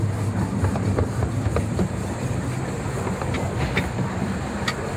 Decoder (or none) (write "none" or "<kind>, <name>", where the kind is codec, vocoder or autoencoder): none